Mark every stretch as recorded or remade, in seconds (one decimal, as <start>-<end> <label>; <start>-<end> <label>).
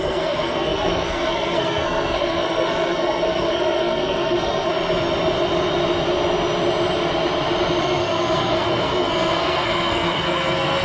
0.0-4.7 remade; 4.7-7.8 recorded; 7.8-10.8 remade